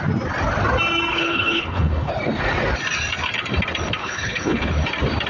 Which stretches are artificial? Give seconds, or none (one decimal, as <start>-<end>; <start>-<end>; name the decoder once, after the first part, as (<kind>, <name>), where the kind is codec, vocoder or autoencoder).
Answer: 1.1-2.1 (codec, HILCodec); 4.0-4.7